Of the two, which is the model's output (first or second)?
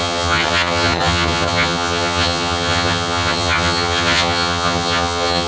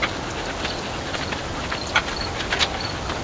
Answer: first